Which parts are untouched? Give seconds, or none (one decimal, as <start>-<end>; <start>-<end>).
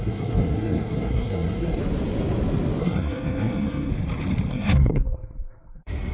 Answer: 1.8-2.8; 3.9-4.5